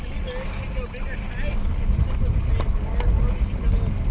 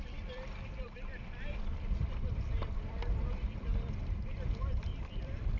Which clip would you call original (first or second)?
first